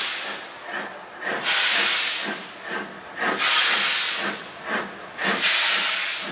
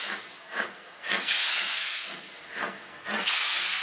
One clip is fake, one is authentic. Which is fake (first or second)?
second